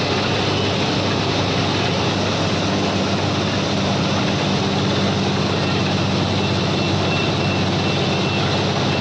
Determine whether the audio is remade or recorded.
recorded